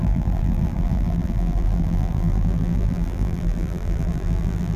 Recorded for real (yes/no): no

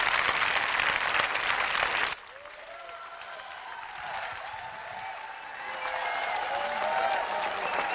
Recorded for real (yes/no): yes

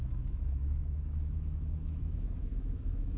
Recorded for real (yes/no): no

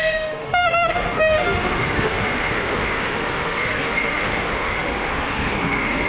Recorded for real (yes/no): no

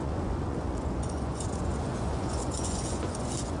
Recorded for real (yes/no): no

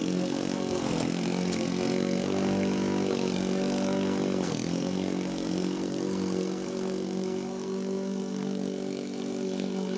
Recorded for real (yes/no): no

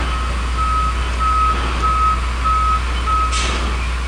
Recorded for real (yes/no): yes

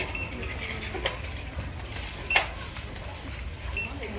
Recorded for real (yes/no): yes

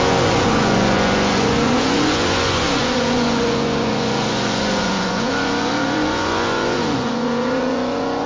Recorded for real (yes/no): no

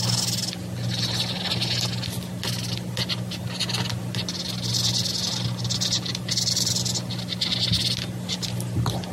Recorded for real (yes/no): yes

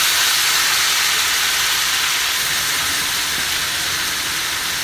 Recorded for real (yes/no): yes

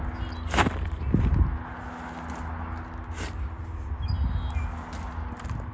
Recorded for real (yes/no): yes